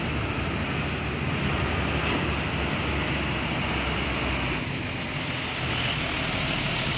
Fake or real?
real